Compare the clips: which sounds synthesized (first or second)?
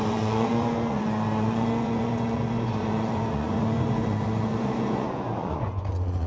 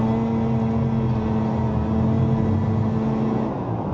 first